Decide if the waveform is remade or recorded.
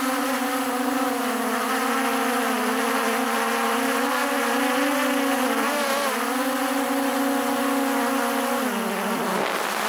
recorded